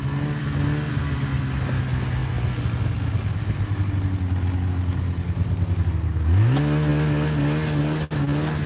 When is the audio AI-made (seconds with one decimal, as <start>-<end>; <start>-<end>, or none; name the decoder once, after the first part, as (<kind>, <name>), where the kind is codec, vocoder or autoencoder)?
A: none